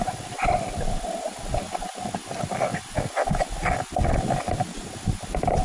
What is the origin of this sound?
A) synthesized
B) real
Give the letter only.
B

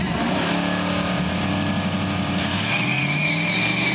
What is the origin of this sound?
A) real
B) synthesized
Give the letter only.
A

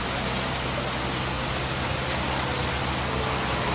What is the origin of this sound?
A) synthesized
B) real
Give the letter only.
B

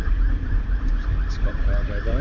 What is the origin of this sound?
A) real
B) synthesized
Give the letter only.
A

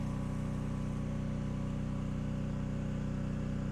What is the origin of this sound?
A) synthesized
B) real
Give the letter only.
B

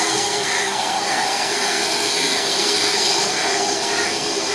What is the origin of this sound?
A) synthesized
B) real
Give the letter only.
A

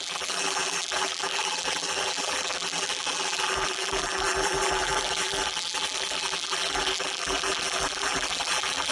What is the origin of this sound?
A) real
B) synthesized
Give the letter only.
B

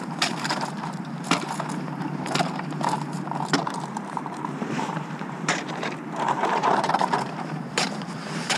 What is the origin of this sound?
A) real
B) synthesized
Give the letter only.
B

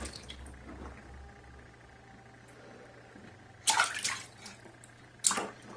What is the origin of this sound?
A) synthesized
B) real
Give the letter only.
B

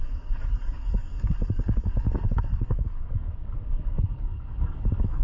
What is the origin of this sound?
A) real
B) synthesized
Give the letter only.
B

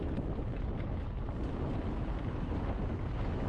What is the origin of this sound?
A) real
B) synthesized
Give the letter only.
A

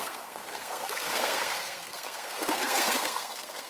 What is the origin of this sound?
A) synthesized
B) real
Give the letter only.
A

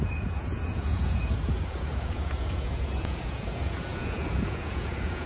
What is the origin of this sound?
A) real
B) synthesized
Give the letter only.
B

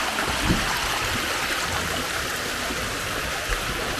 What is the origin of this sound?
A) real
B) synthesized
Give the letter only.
A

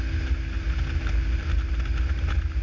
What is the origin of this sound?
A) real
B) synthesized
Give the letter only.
A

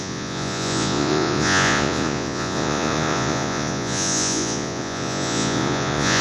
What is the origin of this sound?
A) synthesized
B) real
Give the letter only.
A